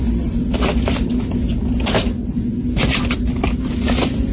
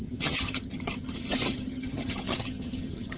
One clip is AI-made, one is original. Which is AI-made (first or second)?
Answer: second